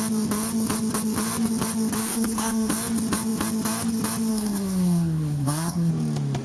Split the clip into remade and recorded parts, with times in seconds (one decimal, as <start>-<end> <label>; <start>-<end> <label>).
0.0-2.0 recorded; 2.0-2.7 remade; 2.7-4.3 recorded; 4.3-5.9 remade; 5.9-6.4 recorded